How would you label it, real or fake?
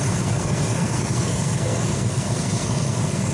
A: fake